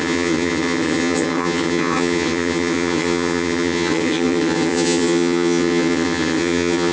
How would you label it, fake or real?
fake